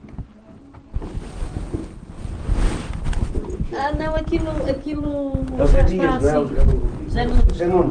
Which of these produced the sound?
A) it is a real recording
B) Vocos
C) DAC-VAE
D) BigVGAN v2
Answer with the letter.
A